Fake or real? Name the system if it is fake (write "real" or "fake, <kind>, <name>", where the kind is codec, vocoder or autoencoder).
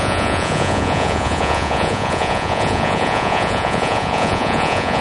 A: fake, vocoder, Vocos